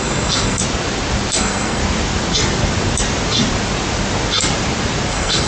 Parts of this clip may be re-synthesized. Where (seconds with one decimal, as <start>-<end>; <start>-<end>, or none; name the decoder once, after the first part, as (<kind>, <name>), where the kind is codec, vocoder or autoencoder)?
0.0-0.6 (codec, SNAC); 1.3-1.8; 5.1-5.5

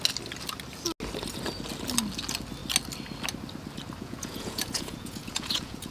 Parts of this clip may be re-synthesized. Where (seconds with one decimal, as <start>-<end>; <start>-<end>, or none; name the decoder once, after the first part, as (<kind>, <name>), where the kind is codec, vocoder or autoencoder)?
4.0-5.9 (vocoder, Vocos)

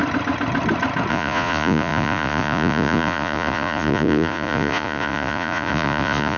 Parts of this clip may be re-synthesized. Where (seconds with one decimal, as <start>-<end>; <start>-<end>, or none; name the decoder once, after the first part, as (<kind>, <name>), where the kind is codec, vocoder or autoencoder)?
1.1-6.4 (vocoder, Vocos)

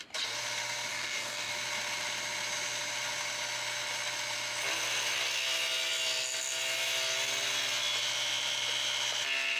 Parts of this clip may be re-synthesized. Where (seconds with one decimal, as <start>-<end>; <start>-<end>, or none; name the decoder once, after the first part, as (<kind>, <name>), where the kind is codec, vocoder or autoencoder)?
0.9-1.5 (codec, DAC)

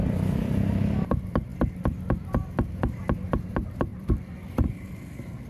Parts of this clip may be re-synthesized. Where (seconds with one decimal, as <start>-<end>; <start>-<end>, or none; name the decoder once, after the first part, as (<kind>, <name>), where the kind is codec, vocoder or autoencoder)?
0.0-1.5 (vocoder, BigVGAN v2); 3.5-5.5

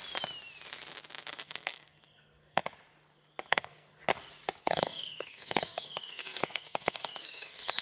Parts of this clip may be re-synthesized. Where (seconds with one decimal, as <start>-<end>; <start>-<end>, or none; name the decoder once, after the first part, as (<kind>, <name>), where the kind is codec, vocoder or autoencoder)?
1.4-2.6 (codec, SNAC); 3.5-4.0; 4.6-7.8

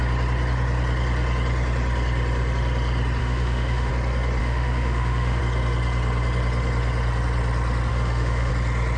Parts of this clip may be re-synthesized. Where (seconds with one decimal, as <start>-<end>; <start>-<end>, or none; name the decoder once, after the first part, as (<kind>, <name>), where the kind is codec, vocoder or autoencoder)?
3.2-3.9 (autoencoder, DAC-VAE); 4.4-5.4; 7.9-8.5

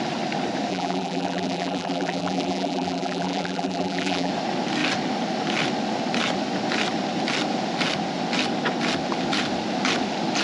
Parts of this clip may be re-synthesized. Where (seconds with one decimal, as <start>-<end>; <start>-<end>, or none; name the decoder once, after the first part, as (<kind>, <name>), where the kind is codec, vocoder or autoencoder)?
0.7-4.3 (vocoder, BigVGAN v2)